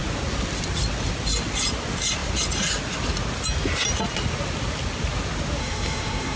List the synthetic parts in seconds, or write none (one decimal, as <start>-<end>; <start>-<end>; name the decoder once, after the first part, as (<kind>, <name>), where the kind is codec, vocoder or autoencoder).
5.6-6.4 (codec, SNAC)